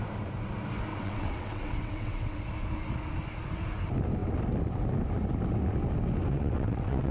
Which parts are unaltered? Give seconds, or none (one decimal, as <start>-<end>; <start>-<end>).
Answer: 0.0-0.9; 2.4-6.3